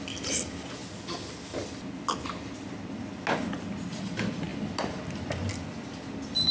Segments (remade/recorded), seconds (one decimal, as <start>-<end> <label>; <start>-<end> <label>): 0.0-6.5 recorded